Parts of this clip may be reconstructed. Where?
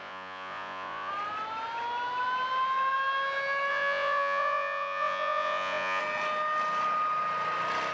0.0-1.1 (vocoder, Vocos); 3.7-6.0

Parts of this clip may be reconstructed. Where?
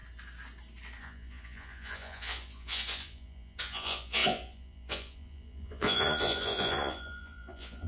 1.0-7.9 (vocoder, Vocos)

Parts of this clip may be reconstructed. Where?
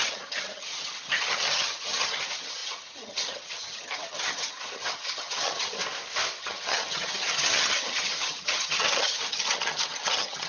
0.0-5.8 (vocoder, HiFi-GAN); 6.4-10.5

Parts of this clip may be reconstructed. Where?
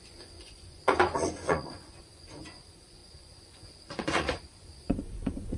0.0-5.6 (vocoder, Vocos)